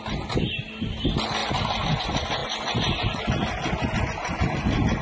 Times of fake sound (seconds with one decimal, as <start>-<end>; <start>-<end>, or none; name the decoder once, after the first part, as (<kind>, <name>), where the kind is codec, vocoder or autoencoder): none